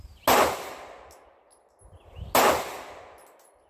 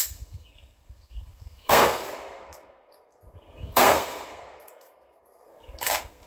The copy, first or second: second